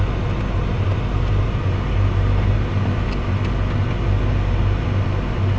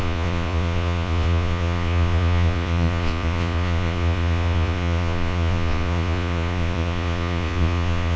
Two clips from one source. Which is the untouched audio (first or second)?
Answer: first